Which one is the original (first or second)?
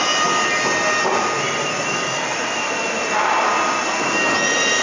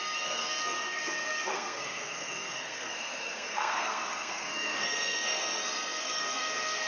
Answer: first